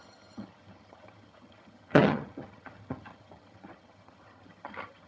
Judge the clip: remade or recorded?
remade